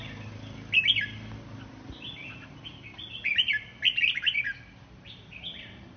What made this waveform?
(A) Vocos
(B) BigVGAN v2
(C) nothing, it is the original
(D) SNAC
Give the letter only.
C